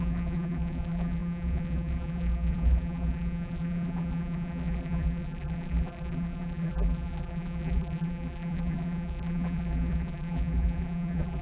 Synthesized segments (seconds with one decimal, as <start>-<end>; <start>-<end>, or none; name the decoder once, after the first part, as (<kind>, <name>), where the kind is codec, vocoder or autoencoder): 0.0-11.4 (vocoder, BigVGAN v2)